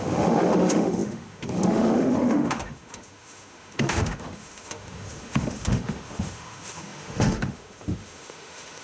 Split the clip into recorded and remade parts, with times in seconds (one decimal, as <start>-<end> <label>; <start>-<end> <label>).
0.0-8.8 remade